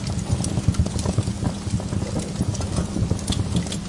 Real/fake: real